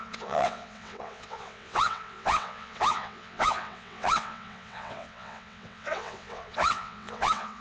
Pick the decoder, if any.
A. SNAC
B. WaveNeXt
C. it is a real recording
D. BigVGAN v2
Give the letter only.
B